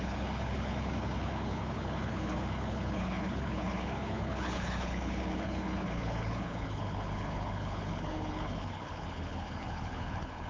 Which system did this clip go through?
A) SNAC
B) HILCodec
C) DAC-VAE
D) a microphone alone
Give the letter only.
B